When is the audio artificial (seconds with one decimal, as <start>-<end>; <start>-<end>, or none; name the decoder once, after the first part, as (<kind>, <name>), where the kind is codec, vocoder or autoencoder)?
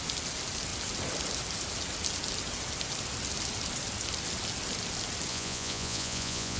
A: 5.3-6.6 (vocoder, Vocos)